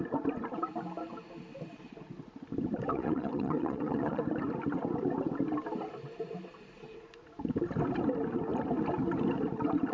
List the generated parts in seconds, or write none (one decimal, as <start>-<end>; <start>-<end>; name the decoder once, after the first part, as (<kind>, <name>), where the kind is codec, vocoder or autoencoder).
2.9-4.2 (vocoder, Vocos)